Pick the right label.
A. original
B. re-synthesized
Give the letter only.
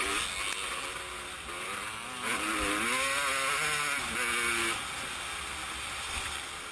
A